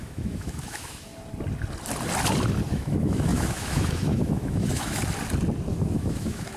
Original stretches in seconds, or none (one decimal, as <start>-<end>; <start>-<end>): 1.1-2.7; 5.0-5.7

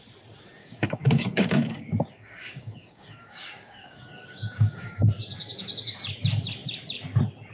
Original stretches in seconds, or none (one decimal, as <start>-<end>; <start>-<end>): 0.0-0.6; 5.1-7.5